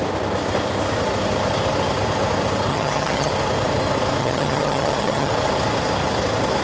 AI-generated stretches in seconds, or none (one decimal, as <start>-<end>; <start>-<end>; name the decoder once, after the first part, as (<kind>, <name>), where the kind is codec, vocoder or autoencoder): 2.7-3.3 (vocoder, HiFi-GAN); 4.2-5.3